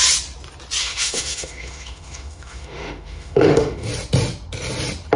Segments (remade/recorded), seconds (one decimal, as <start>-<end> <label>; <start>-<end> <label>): 0.0-0.8 recorded; 0.8-3.9 remade; 3.9-5.2 recorded